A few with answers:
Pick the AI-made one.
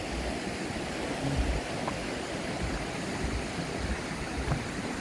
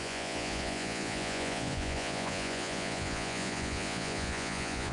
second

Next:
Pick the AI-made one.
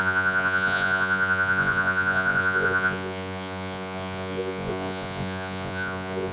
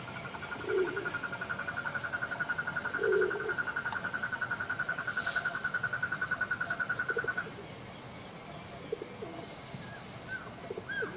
first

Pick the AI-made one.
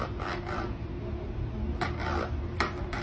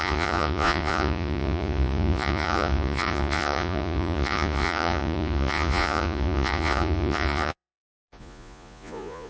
second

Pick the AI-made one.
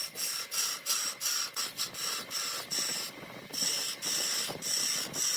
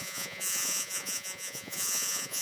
second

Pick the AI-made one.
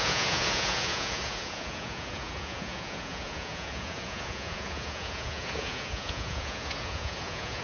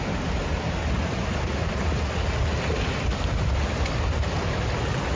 first